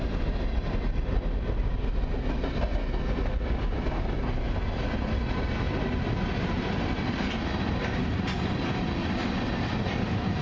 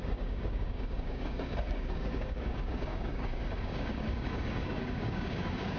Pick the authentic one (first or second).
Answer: first